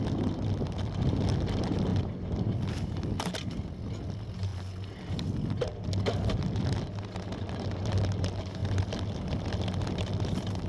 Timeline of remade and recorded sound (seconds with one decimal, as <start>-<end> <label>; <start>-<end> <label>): 0.0-10.7 recorded